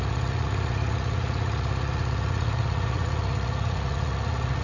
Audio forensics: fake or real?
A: fake